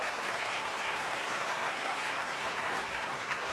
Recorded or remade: remade